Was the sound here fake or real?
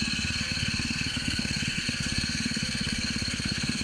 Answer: fake